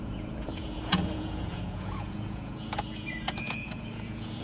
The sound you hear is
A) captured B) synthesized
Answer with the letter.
B